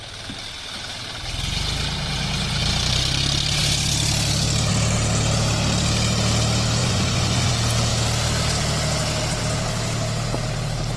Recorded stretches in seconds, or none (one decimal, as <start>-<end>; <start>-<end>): 0.0-6.8; 7.5-11.0